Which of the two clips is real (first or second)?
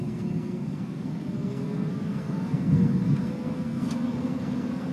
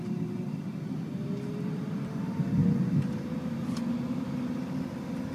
second